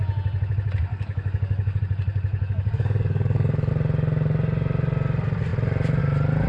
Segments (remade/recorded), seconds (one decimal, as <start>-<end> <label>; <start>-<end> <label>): 0.0-0.9 recorded; 0.9-1.8 remade; 1.8-2.3 recorded; 2.3-3.7 remade; 3.7-6.5 recorded